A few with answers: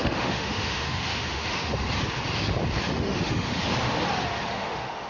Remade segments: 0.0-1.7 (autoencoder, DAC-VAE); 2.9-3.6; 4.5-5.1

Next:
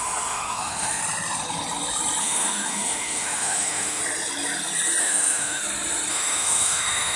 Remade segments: 0.0-1.0 (autoencoder, DAC-VAE); 2.2-4.0; 5.0-5.6; 6.1-7.2